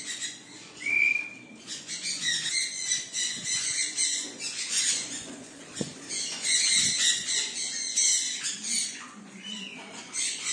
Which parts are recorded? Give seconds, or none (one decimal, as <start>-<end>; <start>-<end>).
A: 1.1-1.6